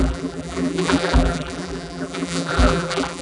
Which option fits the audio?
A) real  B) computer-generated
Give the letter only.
B